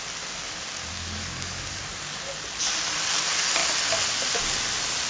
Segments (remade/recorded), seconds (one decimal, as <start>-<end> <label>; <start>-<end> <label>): 0.0-0.8 recorded; 0.8-1.8 remade; 1.8-5.1 recorded